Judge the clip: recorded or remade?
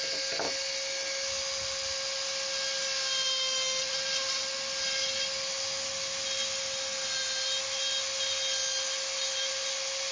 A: recorded